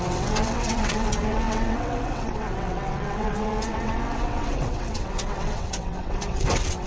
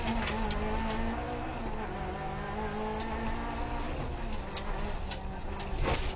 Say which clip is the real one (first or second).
second